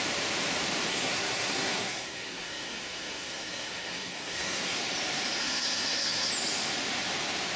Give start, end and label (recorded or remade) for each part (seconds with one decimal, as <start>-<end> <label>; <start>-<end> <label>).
0.0-0.9 recorded; 0.9-4.8 remade; 4.8-5.4 recorded; 5.4-6.3 remade; 6.3-7.6 recorded